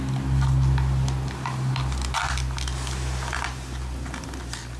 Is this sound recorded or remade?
recorded